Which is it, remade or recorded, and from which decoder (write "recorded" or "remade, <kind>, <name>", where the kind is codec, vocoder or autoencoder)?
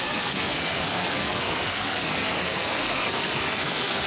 remade, codec, SNAC